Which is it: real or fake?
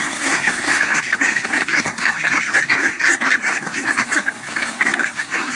fake